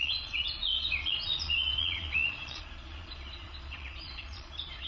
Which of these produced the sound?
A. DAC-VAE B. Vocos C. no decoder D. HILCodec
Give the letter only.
B